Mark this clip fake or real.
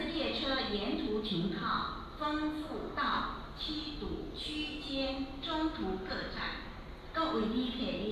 real